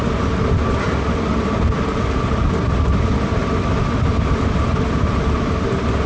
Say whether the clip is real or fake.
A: real